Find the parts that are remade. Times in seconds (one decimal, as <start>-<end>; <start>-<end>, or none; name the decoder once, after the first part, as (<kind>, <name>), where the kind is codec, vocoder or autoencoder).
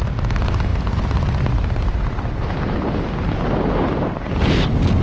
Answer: none